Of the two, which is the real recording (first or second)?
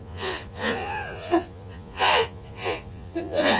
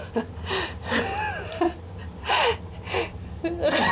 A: second